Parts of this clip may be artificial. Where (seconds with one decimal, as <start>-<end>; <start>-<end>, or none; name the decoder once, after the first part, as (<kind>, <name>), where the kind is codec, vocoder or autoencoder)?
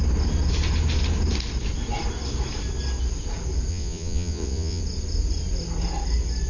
3.7-4.8 (vocoder, Vocos)